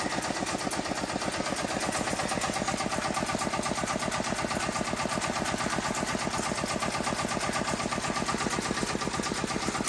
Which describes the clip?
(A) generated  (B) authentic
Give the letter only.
B